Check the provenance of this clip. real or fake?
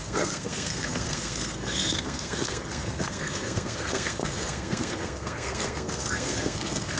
fake